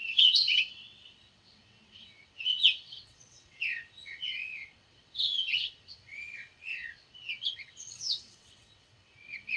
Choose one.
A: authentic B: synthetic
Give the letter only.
B